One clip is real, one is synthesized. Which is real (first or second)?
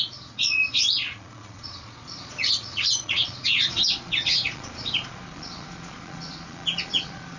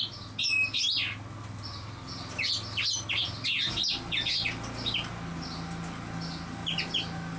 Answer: second